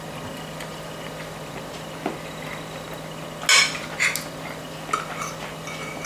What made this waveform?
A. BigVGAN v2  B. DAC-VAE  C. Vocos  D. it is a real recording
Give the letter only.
D